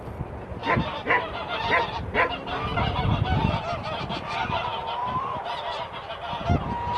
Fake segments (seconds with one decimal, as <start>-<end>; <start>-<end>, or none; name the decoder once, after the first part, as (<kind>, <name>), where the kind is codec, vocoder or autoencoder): none